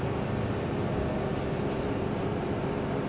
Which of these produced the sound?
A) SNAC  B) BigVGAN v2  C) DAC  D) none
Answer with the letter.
D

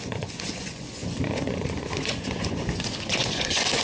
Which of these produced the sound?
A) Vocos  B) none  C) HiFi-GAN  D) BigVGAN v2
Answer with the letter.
A